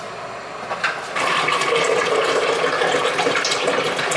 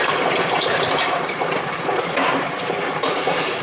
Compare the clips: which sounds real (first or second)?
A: first